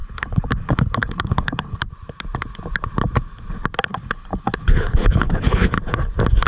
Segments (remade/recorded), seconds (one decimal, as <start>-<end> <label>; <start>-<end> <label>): 0.0-1.9 remade; 1.9-3.9 recorded; 3.9-5.7 remade; 5.7-6.5 recorded